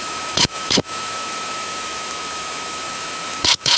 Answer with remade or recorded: remade